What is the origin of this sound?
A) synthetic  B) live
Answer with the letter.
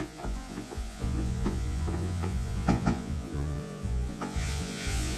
A